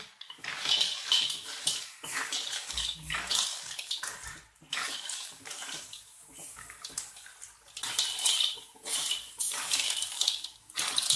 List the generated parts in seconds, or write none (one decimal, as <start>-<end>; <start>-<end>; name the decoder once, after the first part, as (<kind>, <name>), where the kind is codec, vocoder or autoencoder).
0.0-4.1 (codec, DAC); 4.7-7.3; 8.2-11.2